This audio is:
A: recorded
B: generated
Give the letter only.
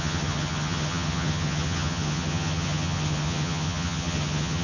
B